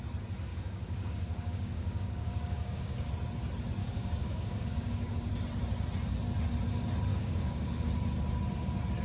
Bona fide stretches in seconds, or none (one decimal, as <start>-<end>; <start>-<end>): 0.0-0.5; 3.1-3.8; 5.3-7.1; 7.9-9.0